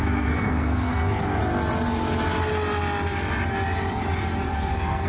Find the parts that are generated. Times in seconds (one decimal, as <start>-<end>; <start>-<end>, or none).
0.0-1.4; 4.5-5.1